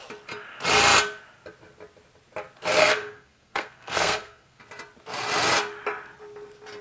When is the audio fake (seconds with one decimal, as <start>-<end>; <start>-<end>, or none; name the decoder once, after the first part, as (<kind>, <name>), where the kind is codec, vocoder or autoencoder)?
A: 2.8-4.6 (codec, SNAC)